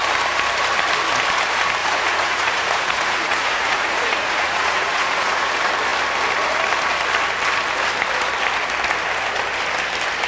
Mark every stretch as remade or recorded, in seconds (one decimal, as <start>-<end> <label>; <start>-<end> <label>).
0.0-1.8 recorded; 1.8-5.5 remade; 5.5-10.3 recorded